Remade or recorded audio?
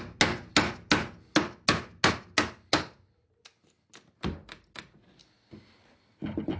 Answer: recorded